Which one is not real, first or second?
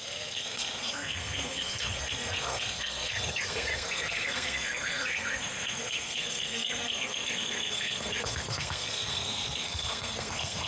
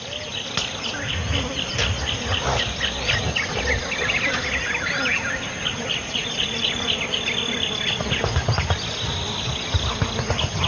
first